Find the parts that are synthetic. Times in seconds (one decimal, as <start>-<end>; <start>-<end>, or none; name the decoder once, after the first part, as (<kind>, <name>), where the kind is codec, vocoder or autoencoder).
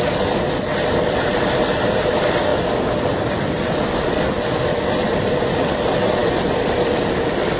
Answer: none